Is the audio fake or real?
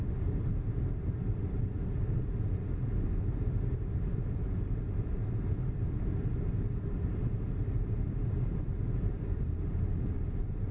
real